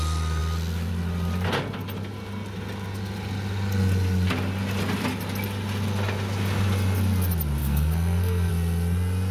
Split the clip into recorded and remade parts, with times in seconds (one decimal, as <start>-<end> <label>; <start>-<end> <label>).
0.0-7.6 recorded; 7.6-8.5 remade; 8.5-9.3 recorded